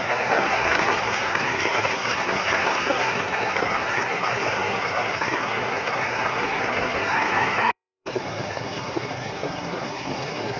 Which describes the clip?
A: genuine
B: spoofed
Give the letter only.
B